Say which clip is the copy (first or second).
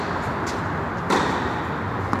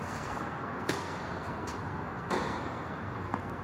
second